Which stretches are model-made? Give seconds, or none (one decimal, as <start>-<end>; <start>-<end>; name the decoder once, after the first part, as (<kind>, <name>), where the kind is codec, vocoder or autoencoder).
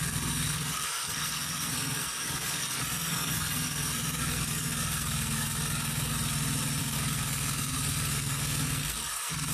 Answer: 0.0-6.1 (codec, SNAC); 6.8-9.5